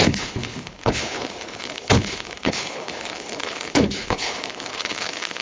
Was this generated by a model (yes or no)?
yes